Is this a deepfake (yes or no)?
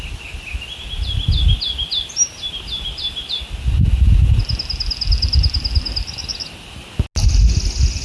no